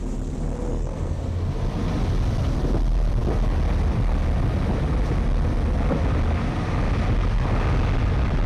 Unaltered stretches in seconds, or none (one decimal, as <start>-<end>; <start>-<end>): 0.0-0.7; 1.2-8.5